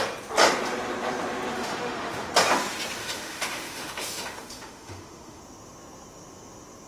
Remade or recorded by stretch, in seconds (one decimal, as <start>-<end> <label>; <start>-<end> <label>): 0.0-1.5 recorded; 1.5-2.3 remade; 2.3-3.0 recorded; 3.0-5.4 remade; 5.4-6.9 recorded